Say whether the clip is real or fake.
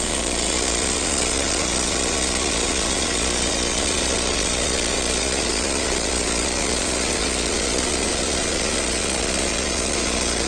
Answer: fake